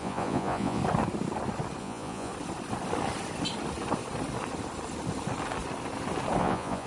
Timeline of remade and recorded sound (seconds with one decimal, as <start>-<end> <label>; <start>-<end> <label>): 0.0-0.8 remade; 0.8-1.8 recorded; 1.8-2.3 remade; 2.3-6.4 recorded; 6.4-6.9 remade